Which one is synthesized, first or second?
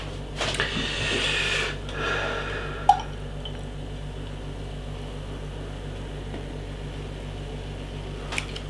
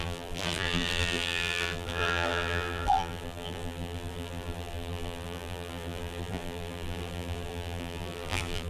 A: second